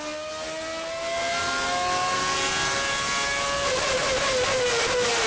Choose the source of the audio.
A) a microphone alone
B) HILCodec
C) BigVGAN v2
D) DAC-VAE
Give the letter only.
A